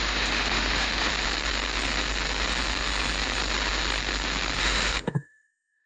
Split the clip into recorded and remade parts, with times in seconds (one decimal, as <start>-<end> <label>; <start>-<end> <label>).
0.0-1.1 remade; 1.1-4.6 recorded; 4.6-5.9 remade